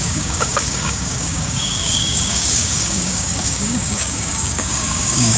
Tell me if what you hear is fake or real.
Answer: fake